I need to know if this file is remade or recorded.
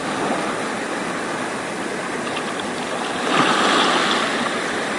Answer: recorded